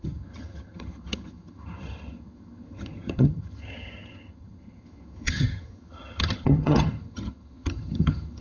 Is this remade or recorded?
remade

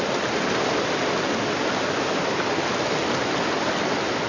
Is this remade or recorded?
recorded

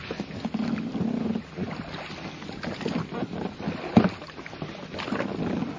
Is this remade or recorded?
recorded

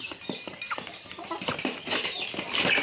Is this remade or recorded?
recorded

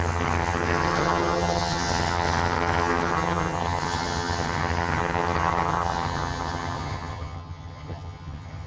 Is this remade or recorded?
remade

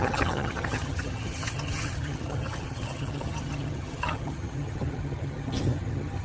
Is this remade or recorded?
remade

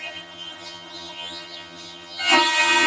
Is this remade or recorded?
remade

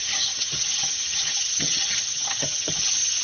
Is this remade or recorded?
remade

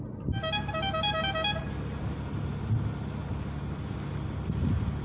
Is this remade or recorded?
recorded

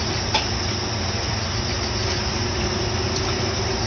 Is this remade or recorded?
recorded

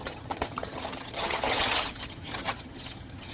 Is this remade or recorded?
remade